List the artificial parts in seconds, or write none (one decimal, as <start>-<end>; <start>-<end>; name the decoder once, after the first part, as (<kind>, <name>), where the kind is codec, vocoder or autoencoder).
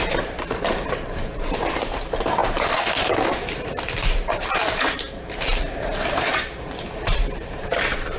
0.0-8.2 (vocoder, BigVGAN v2)